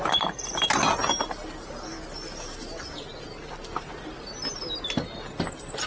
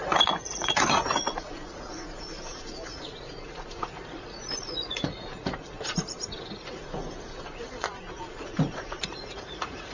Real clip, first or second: first